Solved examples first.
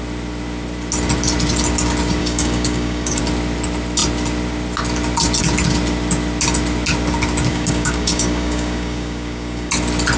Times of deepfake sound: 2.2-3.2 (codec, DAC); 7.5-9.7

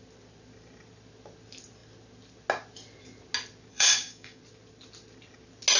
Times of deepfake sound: 3.7-4.4 (codec, DAC)

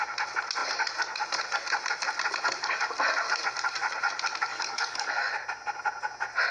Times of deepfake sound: 4.5-5.3 (codec, DAC)

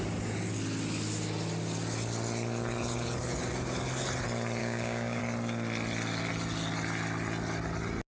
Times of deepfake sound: 4.6-5.2 (codec, DAC)

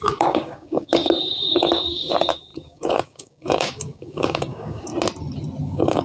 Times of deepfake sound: 0.0-4.9 (codec, DAC); 5.6-6.0

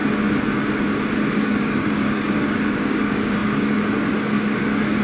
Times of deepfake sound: 1.3-5.0 (codec, DAC)

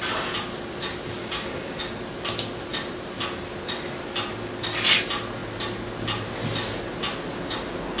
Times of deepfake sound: 1.2-1.8 (codec, DAC)

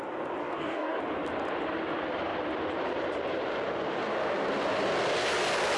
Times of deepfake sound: 0.4-1.0 (codec, DAC)